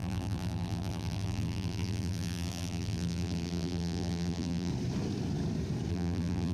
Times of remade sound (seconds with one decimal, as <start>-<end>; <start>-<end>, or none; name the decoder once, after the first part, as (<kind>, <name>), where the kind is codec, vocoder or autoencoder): 0.0-4.7 (vocoder, BigVGAN v2); 5.9-6.5